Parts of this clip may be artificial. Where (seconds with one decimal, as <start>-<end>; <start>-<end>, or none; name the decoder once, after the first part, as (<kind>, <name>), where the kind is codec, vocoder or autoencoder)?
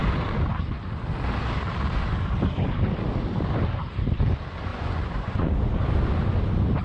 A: 4.7-5.5 (vocoder, Vocos)